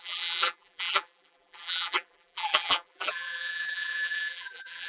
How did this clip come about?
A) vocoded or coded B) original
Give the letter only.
A